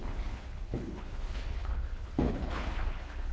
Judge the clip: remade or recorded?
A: remade